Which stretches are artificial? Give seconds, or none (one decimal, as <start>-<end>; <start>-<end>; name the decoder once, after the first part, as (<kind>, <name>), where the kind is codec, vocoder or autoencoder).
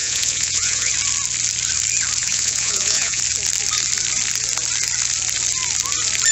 0.0-0.9 (vocoder, Vocos); 2.2-3.2